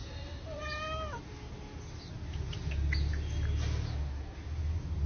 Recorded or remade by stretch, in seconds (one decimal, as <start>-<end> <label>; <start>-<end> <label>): 0.0-5.1 recorded

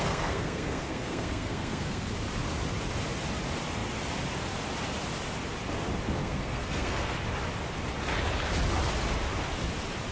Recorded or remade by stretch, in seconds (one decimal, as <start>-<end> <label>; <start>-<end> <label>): 0.0-2.1 remade; 2.1-6.2 recorded; 6.2-7.1 remade; 7.1-10.1 recorded

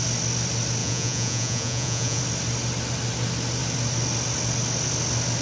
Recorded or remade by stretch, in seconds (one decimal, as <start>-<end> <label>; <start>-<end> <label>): 0.0-0.8 recorded; 0.8-2.2 remade; 2.2-5.4 recorded

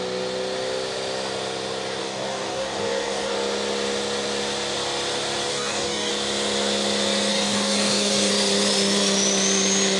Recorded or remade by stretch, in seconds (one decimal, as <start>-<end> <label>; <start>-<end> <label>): 0.0-2.0 recorded; 2.0-3.3 remade; 3.3-5.5 recorded; 5.5-6.1 remade; 6.1-7.3 recorded; 7.3-8.3 remade; 8.3-10.0 recorded

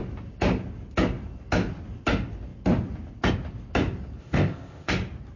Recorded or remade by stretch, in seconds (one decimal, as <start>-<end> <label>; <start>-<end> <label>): 0.0-4.2 recorded; 4.2-4.9 remade; 4.9-5.4 recorded